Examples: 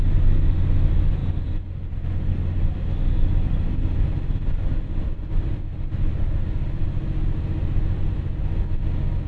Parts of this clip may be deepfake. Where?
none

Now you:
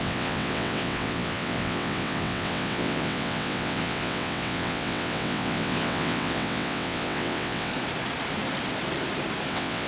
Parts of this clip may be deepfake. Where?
0.0-7.7 (vocoder, WaveNeXt); 9.5-9.9

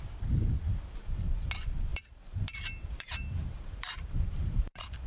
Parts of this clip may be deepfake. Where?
1.9-5.1 (vocoder, BigVGAN v2)

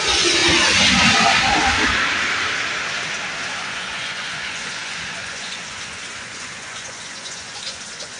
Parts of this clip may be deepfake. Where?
0.0-0.4 (vocoder, Vocos); 3.5-8.2

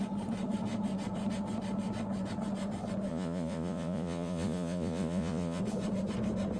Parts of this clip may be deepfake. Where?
3.1-5.6 (vocoder, Vocos)

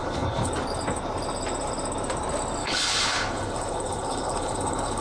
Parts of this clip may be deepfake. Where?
0.0-0.5 (codec, HILCodec); 2.6-5.0